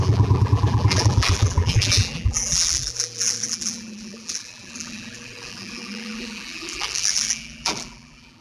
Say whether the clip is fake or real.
fake